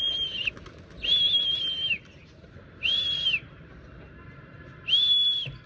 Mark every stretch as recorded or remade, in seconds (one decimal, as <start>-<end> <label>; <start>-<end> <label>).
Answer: 0.0-1.4 recorded; 1.4-4.8 remade; 4.8-5.7 recorded